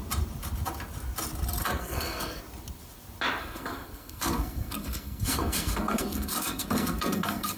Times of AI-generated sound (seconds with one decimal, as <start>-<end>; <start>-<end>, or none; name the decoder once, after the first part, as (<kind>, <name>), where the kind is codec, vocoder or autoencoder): 1.6-2.4 (codec, SNAC); 3.4-7.6